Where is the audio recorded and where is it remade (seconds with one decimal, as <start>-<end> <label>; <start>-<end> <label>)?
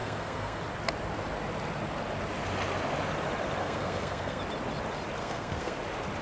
0.0-0.6 remade; 0.6-3.6 recorded; 3.6-4.4 remade; 4.4-5.2 recorded; 5.2-5.8 remade; 5.8-6.2 recorded